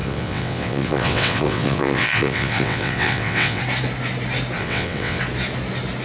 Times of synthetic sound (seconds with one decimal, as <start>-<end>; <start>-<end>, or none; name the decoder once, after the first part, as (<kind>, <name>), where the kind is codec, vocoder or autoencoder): 0.0-3.6 (vocoder, WaveNeXt); 4.6-5.2